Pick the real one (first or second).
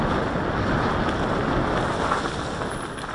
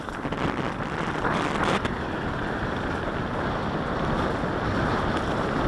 first